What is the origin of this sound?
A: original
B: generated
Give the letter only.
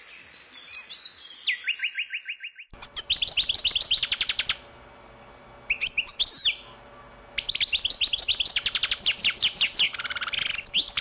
A